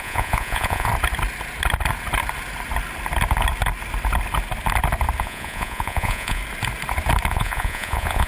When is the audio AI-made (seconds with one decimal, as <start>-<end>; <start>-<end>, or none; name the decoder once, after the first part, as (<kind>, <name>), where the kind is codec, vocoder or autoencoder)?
0.0-0.9 (vocoder, Vocos); 5.2-6.4; 7.3-8.3